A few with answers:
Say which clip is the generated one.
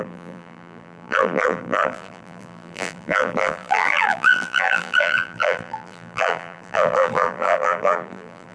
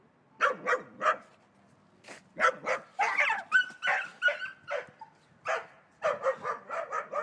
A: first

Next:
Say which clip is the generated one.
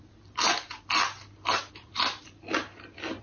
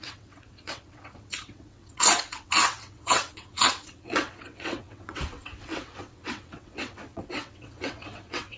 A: second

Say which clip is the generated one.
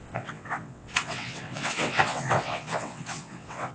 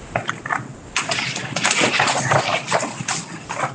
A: first